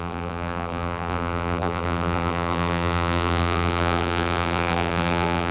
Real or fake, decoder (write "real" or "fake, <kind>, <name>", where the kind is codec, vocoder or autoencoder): fake, vocoder, BigVGAN v2